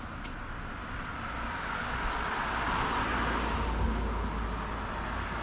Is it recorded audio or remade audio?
recorded